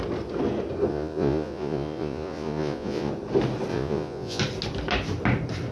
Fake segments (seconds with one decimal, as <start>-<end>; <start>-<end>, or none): 0.9-3.1; 3.7-4.4